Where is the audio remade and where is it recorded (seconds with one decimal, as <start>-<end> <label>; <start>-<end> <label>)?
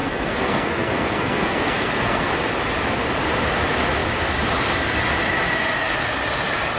0.0-2.3 remade; 2.3-6.8 recorded